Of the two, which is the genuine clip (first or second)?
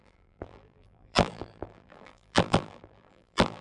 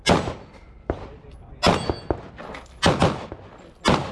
second